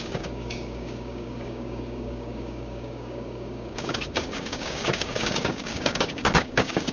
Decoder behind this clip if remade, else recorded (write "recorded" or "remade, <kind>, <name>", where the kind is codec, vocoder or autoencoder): remade, codec, DAC